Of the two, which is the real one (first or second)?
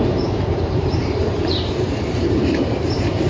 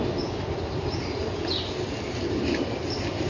second